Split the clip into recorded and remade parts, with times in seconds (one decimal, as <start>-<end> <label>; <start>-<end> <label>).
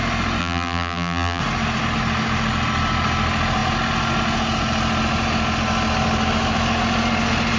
0.0-0.4 recorded; 0.4-1.4 remade; 1.4-7.6 recorded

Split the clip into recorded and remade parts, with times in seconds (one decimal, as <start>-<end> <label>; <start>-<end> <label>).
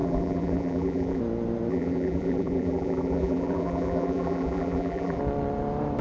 0.0-1.2 remade; 1.2-1.7 recorded; 1.7-5.2 remade; 5.2-6.0 recorded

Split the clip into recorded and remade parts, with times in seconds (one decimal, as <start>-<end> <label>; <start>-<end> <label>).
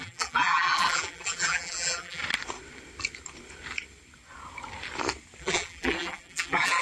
0.0-2.2 remade; 2.2-5.4 recorded; 5.4-6.8 remade